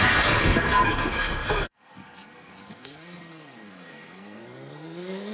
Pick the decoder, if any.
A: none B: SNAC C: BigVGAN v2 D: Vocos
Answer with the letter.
B